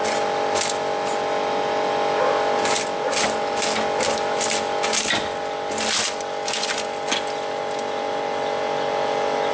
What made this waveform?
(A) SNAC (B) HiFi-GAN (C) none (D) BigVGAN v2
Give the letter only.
C